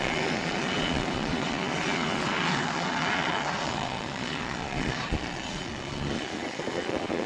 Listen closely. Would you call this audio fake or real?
fake